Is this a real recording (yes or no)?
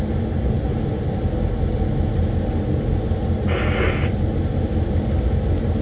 yes